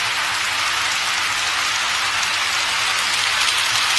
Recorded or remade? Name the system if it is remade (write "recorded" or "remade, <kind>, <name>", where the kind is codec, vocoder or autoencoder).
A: recorded